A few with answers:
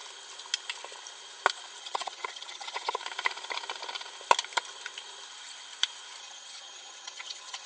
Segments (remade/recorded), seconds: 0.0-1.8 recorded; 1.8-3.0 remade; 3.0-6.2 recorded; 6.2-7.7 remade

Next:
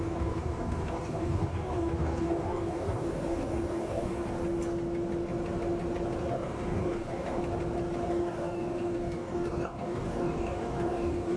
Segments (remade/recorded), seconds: 0.0-4.2 remade; 4.2-6.3 recorded; 6.3-7.4 remade; 7.4-8.1 recorded; 8.1-11.4 remade

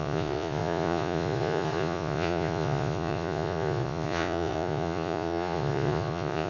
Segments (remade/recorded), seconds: 0.0-6.5 remade

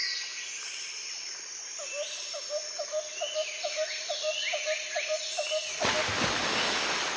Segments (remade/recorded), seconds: 0.0-0.5 remade; 0.5-7.2 recorded

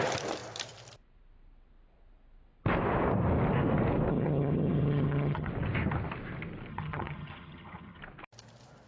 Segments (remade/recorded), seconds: 0.0-4.1 recorded; 4.1-5.5 remade; 5.5-6.7 recorded; 6.7-8.0 remade; 8.0-8.9 recorded

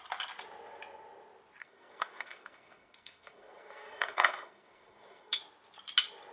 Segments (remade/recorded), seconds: 0.0-1.6 recorded; 1.6-5.4 remade; 5.4-6.3 recorded

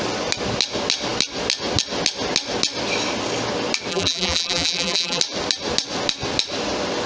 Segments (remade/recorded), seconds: 0.0-3.9 recorded; 3.9-5.2 remade; 5.2-7.1 recorded